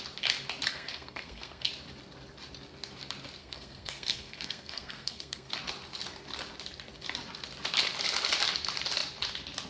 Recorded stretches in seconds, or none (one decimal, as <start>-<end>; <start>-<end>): 0.0-0.7; 1.7-3.4; 5.5-9.7